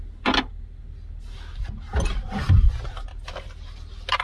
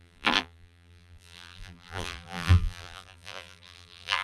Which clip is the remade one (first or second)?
second